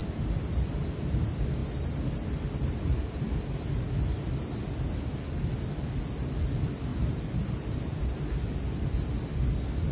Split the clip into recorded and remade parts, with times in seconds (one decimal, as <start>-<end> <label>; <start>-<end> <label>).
0.0-6.9 recorded; 6.9-8.0 remade; 8.0-9.9 recorded